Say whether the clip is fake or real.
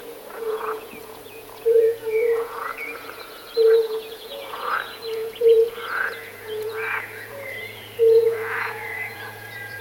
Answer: fake